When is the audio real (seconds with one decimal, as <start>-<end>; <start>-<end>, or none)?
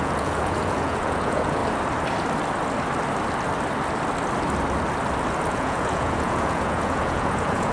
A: 1.6-5.5